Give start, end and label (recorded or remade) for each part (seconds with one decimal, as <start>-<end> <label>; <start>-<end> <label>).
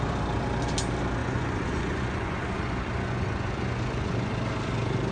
0.0-1.2 recorded; 1.2-4.3 remade; 4.3-5.1 recorded